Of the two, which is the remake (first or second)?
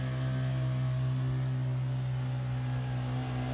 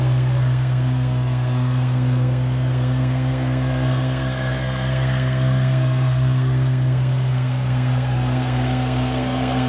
second